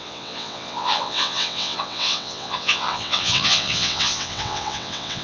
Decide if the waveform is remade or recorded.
remade